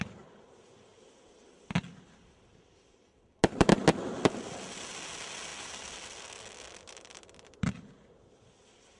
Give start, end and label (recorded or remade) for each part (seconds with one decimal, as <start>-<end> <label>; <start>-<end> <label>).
0.0-9.0 recorded